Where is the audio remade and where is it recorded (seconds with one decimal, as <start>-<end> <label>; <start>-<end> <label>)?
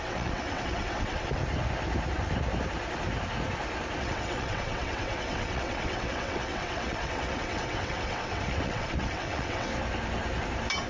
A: 0.0-1.4 remade; 1.4-4.0 recorded; 4.0-9.7 remade; 9.7-10.9 recorded